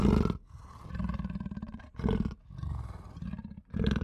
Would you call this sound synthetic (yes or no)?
no